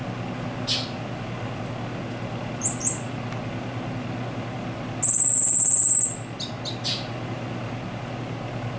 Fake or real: real